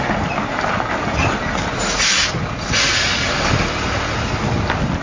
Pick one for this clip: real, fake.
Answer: real